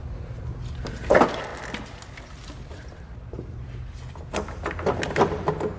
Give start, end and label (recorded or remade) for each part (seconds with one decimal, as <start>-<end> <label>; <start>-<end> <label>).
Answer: 0.0-1.1 recorded; 1.1-5.8 remade